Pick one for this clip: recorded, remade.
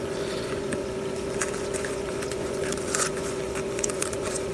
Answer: remade